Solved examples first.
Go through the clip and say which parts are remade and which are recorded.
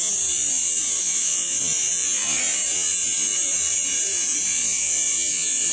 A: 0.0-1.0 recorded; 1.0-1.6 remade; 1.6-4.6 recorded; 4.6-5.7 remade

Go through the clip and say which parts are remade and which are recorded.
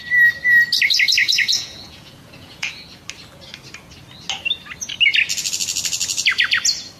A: 0.0-1.2 recorded; 1.2-2.7 remade; 2.7-7.0 recorded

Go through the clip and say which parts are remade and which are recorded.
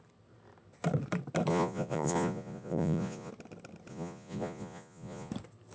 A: 0.0-1.5 recorded; 1.5-3.3 remade; 3.3-3.9 recorded; 3.9-5.3 remade; 5.3-5.7 recorded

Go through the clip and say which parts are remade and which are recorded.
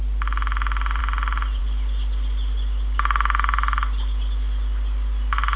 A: 0.0-5.6 recorded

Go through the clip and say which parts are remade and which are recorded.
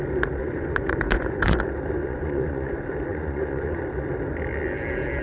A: 0.0-0.4 recorded; 0.4-1.6 remade; 1.6-2.0 recorded; 2.0-2.7 remade; 2.7-3.1 recorded; 3.1-3.8 remade; 3.8-5.2 recorded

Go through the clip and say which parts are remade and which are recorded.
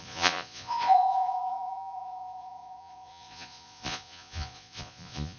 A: 0.0-5.4 remade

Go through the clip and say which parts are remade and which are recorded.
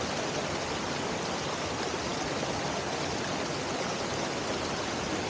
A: 0.0-5.3 recorded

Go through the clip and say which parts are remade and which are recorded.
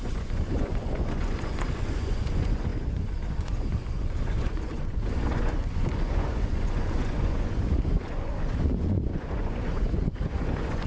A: 0.0-10.9 remade